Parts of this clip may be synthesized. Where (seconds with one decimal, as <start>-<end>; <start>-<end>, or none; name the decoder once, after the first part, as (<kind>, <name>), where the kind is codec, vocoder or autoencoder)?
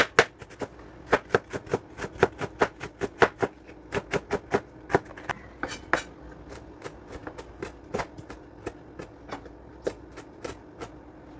none